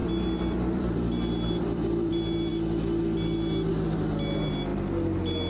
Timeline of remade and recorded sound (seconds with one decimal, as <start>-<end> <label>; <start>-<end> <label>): 0.0-2.1 remade; 2.1-5.5 recorded